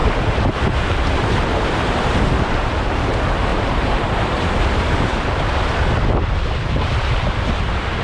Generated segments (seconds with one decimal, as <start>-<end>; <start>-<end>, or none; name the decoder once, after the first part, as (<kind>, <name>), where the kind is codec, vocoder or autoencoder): 0.0-3.1 (vocoder, BigVGAN v2); 3.5-5.3